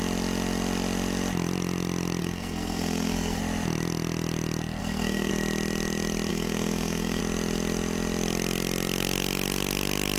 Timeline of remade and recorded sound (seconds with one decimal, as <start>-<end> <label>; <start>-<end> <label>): 0.0-2.2 recorded; 2.2-3.4 remade; 3.4-4.8 recorded; 4.8-5.3 remade; 5.3-6.3 recorded; 6.3-7.2 remade; 7.2-10.2 recorded